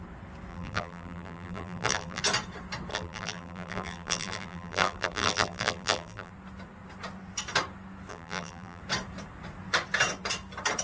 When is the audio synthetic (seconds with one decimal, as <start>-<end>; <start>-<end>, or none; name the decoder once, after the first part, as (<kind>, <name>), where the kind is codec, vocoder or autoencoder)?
0.5-2.2 (vocoder, BigVGAN v2); 2.9-6.3; 8.1-8.8